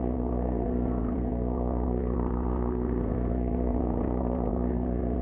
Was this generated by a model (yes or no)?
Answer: yes